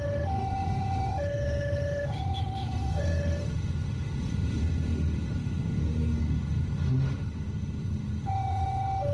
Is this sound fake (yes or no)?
yes